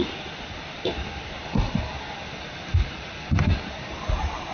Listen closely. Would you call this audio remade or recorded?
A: recorded